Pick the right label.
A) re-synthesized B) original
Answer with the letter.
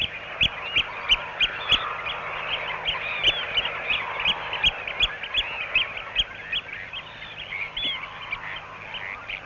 B